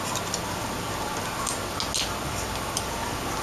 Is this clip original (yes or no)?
yes